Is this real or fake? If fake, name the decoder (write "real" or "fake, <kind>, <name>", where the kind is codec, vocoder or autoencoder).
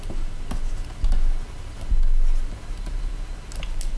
real